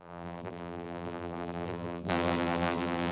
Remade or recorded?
remade